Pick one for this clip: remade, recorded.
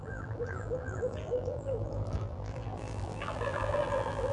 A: remade